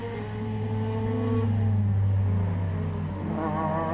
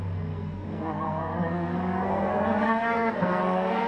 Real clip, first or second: first